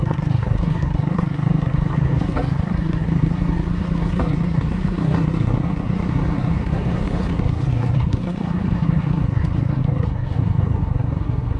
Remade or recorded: remade